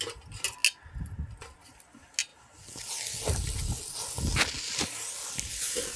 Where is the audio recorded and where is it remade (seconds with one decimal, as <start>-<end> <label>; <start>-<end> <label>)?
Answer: 0.0-6.0 recorded